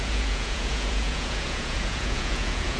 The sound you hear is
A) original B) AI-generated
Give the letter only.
B